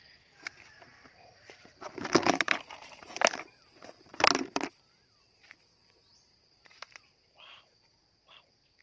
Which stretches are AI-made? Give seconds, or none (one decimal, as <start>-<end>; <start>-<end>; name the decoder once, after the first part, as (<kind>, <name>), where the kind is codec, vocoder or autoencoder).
0.0-8.8 (vocoder, BigVGAN v2)

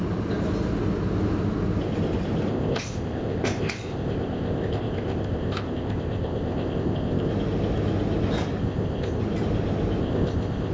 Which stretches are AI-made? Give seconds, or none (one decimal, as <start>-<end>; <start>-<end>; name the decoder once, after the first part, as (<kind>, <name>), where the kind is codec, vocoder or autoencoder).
2.5-7.3 (codec, ZipCodec); 8.6-9.2; 10.0-10.7

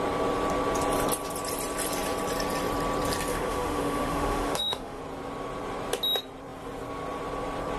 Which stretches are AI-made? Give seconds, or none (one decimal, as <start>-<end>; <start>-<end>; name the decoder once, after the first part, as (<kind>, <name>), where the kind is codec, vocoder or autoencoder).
3.3-5.0 (autoencoder, DAC-VAE)

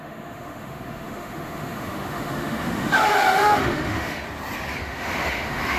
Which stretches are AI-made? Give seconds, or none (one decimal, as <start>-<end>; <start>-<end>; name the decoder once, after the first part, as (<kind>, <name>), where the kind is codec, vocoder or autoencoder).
0.0-4.2 (autoencoder, DAC-VAE); 4.8-5.8

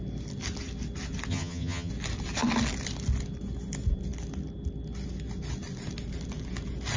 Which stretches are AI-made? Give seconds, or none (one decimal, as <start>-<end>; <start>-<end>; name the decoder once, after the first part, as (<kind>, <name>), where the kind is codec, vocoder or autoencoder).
1.3-1.9 (vocoder, HiFi-GAN)

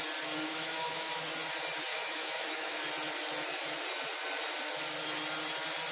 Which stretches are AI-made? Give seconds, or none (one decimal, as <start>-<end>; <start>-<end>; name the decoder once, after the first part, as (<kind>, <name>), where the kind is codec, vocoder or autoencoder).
0.5-1.1 (autoencoder, DAC-VAE); 1.9-2.8